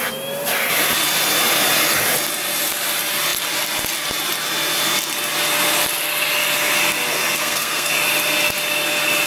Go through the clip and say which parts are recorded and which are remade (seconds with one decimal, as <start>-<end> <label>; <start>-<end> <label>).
0.0-7.4 recorded; 7.4-7.9 remade; 7.9-9.3 recorded